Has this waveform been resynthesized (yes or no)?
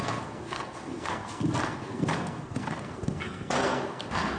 yes